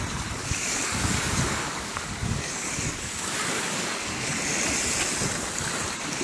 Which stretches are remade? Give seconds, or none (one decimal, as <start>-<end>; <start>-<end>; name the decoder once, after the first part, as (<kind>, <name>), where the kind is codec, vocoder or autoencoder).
0.4-4.1 (codec, DAC)